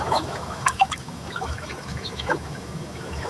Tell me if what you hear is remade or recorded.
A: remade